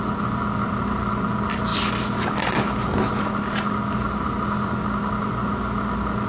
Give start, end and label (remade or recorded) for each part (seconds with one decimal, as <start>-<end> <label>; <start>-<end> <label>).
0.0-6.3 recorded